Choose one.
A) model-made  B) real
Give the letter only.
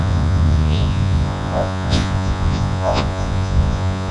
A